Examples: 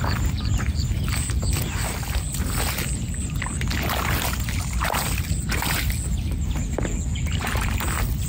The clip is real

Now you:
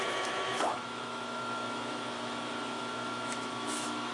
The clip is fake